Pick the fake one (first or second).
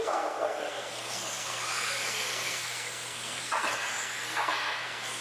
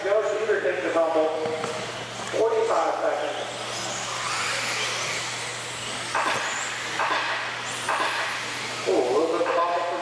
first